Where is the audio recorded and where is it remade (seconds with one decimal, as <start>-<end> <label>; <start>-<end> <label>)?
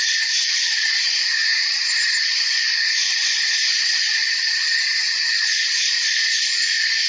0.0-7.1 recorded